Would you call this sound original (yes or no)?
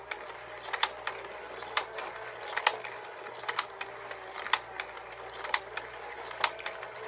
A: yes